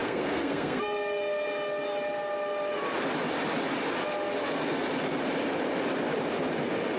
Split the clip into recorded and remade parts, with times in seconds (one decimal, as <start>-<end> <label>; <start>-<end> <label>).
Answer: 0.0-0.8 remade; 0.8-7.0 recorded